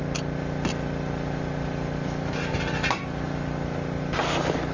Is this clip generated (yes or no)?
no